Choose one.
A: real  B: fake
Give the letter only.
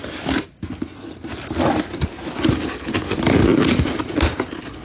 A